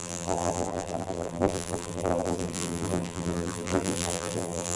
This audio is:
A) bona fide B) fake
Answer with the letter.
B